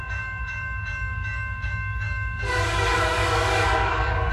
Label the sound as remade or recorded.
remade